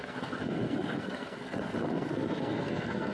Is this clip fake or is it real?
fake